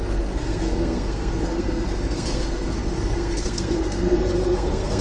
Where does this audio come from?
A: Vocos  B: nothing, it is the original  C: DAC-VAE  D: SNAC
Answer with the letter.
D